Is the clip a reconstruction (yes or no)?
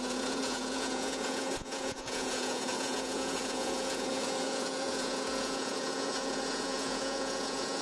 yes